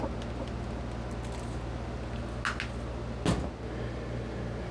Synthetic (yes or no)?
no